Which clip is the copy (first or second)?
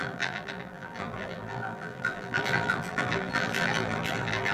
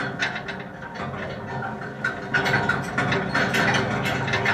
first